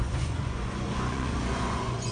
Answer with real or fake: fake